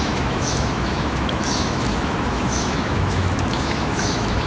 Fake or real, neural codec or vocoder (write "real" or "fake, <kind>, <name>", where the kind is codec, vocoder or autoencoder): fake, autoencoder, DAC-VAE